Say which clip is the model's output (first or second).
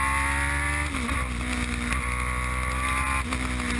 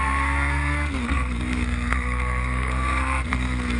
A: second